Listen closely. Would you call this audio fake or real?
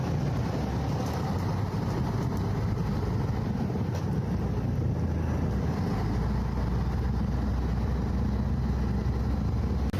real